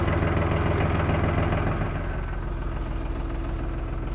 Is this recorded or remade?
recorded